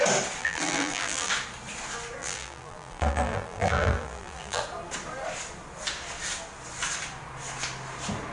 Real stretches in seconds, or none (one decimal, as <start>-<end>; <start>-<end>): 0.0-0.4; 1.3-2.2; 4.6-8.3